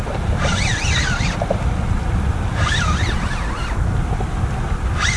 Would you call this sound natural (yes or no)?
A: yes